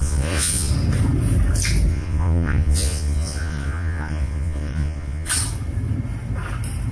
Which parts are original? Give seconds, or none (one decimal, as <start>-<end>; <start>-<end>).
0.7-1.9; 5.3-6.9